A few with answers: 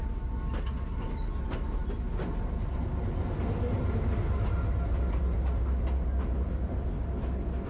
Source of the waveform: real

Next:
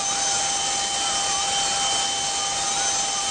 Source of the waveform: real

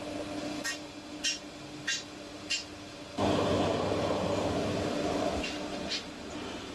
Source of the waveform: real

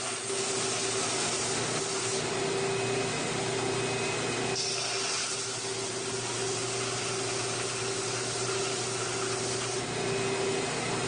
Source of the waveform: real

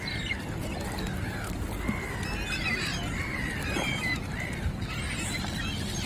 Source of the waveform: real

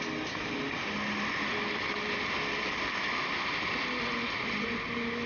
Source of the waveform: real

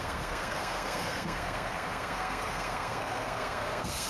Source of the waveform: fake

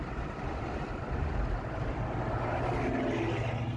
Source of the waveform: real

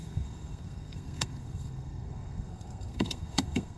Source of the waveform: fake